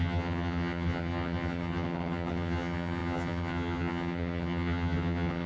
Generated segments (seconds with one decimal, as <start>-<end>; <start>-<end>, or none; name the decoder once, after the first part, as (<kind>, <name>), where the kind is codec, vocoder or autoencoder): 0.0-5.5 (vocoder, HiFi-GAN)